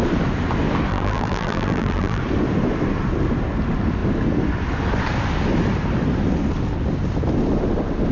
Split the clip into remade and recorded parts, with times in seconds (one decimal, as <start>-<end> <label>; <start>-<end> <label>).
0.0-0.9 recorded; 0.9-2.2 remade; 2.2-8.1 recorded